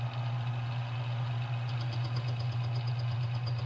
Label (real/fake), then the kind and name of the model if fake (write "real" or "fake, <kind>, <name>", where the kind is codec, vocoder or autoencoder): real